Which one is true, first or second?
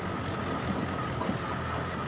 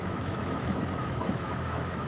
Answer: first